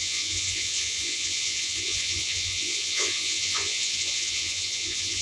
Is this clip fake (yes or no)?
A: yes